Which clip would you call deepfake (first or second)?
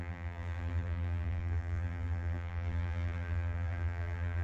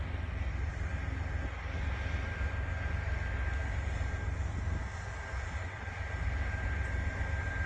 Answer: first